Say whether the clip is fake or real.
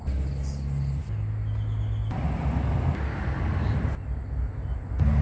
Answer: real